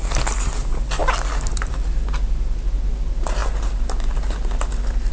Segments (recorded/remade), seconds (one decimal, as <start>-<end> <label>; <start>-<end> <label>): 0.0-1.0 recorded; 1.0-1.7 remade; 1.7-5.1 recorded